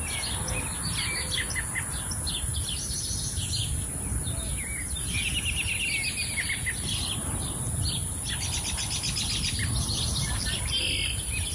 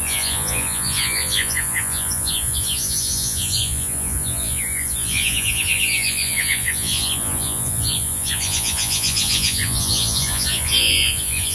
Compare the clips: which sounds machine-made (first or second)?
second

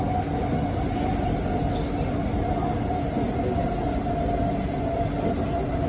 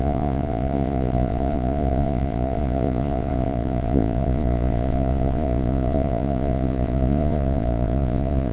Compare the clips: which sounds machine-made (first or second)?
second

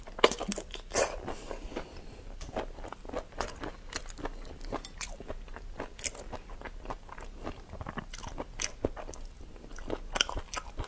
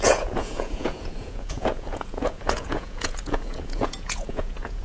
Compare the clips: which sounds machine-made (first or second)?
second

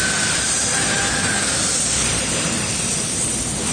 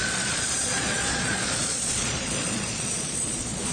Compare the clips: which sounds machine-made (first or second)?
second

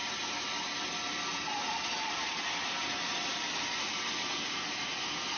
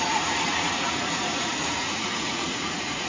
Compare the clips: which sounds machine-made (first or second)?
second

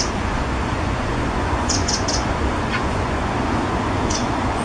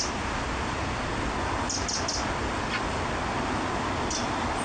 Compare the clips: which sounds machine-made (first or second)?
first